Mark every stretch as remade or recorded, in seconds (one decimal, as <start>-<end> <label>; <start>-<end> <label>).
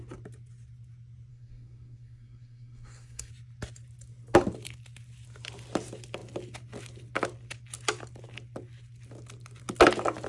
0.0-1.3 recorded; 1.3-3.3 remade; 3.3-10.3 recorded